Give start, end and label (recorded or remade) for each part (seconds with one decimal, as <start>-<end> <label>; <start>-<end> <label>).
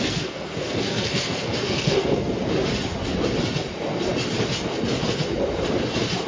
0.0-2.4 remade; 2.4-6.3 recorded